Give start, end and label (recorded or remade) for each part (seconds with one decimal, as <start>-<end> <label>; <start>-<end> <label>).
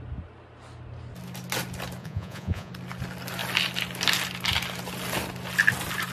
0.0-2.0 recorded; 2.0-2.7 remade; 2.7-6.1 recorded